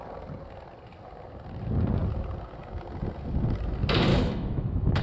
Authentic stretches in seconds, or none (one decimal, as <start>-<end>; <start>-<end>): 0.0-4.1